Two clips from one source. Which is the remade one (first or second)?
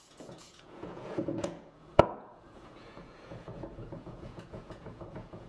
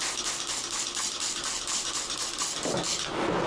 first